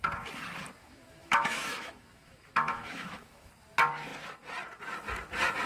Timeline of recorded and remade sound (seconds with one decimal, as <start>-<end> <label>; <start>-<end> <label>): 0.0-0.8 recorded; 0.8-3.5 remade; 3.5-5.7 recorded